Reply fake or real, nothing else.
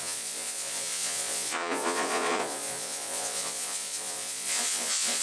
fake